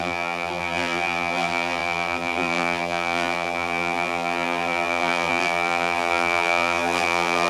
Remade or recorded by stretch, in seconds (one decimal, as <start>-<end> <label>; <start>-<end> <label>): 0.0-7.5 remade